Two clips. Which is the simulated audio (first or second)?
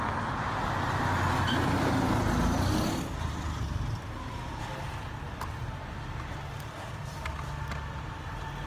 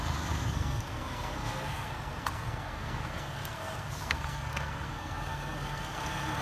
second